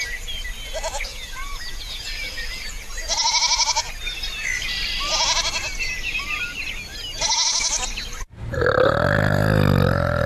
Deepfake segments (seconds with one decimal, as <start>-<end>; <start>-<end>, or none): 1.1-2.9